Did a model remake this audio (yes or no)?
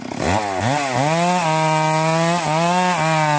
no